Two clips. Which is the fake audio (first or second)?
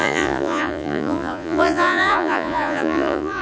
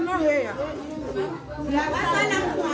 first